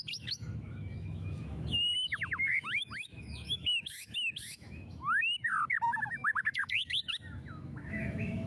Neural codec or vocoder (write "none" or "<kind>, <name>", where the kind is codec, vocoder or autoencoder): autoencoder, DAC-VAE